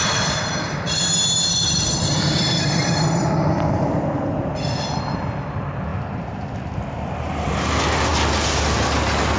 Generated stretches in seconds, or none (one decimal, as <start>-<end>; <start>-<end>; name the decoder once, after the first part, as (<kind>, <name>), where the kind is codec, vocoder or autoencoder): 0.0-4.0 (vocoder, BigVGAN v2)